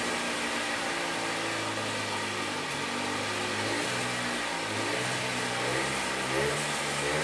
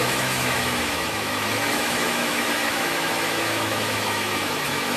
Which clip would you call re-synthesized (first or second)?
second